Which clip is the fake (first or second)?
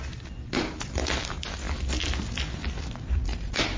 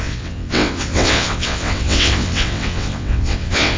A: second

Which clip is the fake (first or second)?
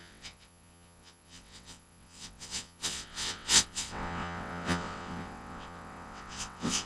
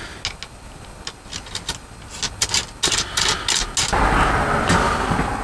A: first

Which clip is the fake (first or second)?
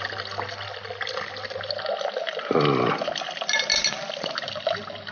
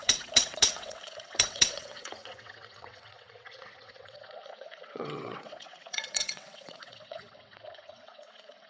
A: second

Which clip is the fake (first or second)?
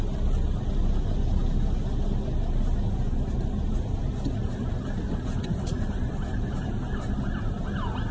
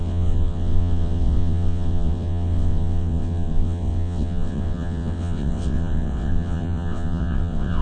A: second